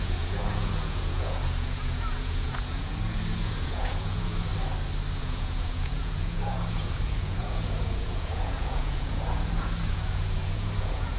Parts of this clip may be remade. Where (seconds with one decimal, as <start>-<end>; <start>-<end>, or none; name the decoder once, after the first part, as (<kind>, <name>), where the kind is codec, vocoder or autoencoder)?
0.0-4.5 (vocoder, Vocos); 5.2-11.2